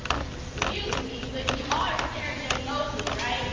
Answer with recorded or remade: recorded